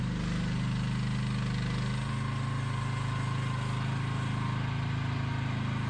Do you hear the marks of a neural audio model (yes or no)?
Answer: no